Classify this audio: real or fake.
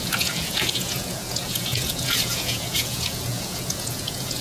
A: fake